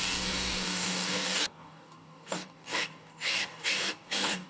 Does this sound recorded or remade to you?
remade